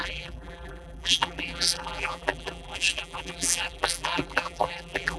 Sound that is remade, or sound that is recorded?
remade